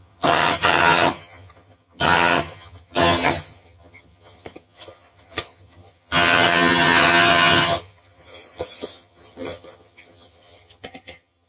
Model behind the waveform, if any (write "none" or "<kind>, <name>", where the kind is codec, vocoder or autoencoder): vocoder, HiFi-GAN